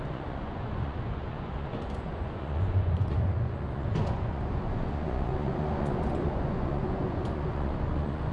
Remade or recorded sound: remade